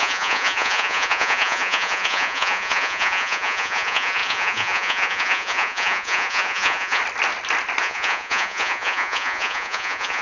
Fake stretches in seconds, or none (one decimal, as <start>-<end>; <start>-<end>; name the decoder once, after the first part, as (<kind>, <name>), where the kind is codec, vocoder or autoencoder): 0.0-7.0 (vocoder, Vocos); 7.8-10.2